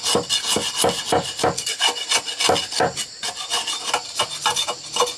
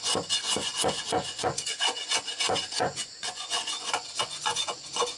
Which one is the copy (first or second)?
second